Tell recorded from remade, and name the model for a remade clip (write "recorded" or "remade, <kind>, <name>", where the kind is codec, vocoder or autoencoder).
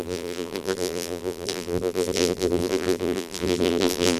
remade, vocoder, BigVGAN v2